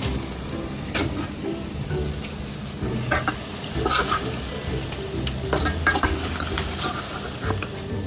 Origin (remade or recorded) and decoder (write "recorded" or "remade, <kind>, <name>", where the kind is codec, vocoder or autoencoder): recorded